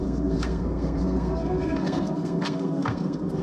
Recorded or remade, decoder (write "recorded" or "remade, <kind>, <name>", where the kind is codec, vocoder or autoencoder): remade, codec, SNAC